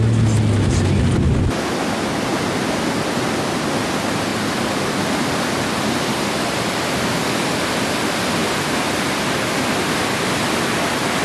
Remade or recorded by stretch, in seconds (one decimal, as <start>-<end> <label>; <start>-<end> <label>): 0.0-11.2 recorded